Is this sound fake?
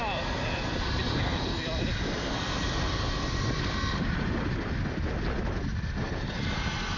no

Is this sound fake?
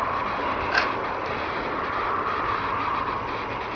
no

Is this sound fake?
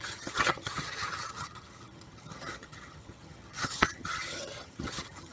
yes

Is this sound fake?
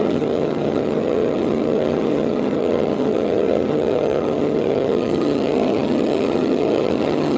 yes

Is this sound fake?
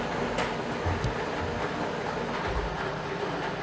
no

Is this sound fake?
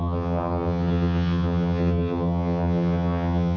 yes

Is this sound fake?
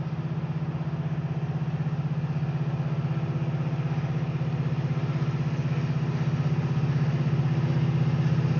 no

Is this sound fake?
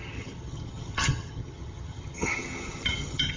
yes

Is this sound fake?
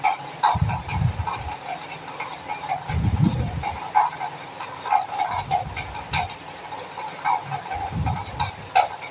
no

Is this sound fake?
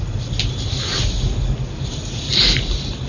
no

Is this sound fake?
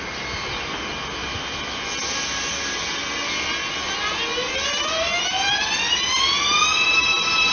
no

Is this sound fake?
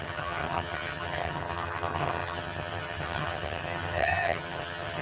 yes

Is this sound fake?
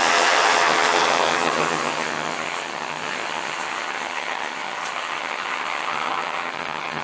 yes